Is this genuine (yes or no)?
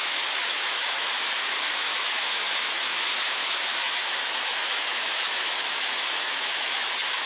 no